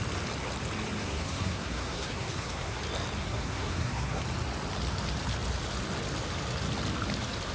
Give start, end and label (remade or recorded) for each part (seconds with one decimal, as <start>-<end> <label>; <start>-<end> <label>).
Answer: 0.0-1.0 recorded; 1.0-2.8 remade; 2.8-3.2 recorded; 3.2-4.2 remade; 4.2-7.5 recorded